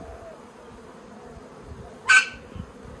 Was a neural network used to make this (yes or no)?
no